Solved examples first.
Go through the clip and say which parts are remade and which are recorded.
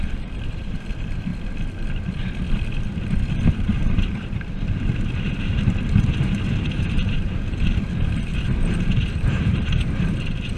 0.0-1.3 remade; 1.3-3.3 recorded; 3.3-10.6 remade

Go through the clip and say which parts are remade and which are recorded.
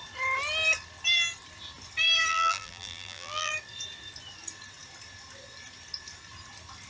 0.0-2.3 recorded; 2.3-3.5 remade; 3.5-6.9 recorded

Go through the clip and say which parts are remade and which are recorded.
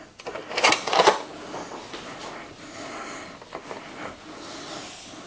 0.0-5.3 recorded